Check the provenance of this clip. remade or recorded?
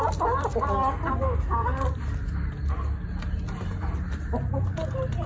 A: recorded